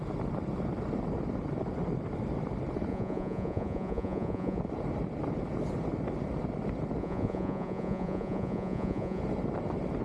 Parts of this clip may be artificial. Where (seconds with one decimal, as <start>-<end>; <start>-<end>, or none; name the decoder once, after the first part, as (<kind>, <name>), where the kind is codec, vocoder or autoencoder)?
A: 2.9-4.6 (vocoder, Vocos); 7.0-9.2